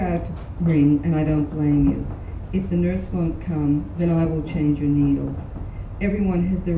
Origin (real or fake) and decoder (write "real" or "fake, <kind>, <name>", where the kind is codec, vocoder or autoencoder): real